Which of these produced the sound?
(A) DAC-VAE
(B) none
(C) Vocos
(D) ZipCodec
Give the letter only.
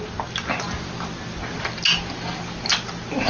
B